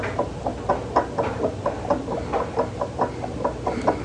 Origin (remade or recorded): recorded